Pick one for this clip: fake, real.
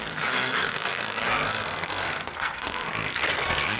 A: fake